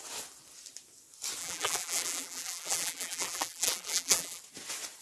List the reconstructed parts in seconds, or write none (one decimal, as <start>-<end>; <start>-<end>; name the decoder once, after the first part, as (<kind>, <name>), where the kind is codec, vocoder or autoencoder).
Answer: 1.4-4.4 (vocoder, BigVGAN v2)